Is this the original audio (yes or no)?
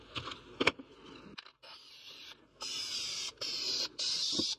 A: yes